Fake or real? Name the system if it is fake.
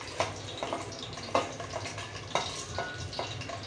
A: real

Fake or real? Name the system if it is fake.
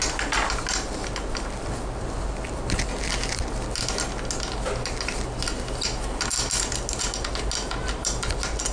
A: real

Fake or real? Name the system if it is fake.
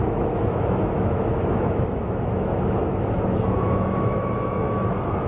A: fake, autoencoder, DAC-VAE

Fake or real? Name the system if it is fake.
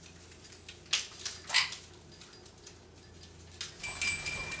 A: real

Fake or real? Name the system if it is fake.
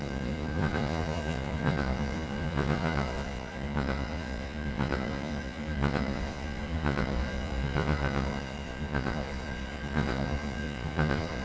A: fake, vocoder, Vocos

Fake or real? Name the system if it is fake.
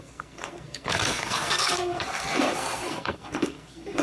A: fake, codec, SNAC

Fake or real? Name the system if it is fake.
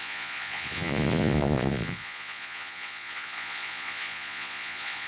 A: fake, vocoder, Vocos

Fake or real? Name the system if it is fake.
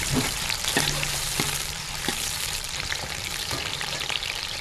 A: fake, vocoder, BigVGAN v2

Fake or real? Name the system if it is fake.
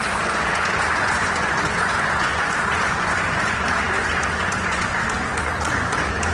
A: fake, vocoder, Vocos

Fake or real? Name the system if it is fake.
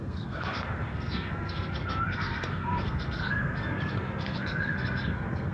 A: fake, codec, SNAC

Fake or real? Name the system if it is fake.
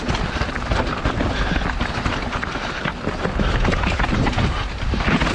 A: real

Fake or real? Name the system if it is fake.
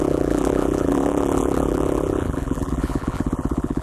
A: fake, vocoder, BigVGAN v2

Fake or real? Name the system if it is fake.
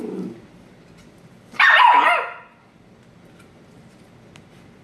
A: real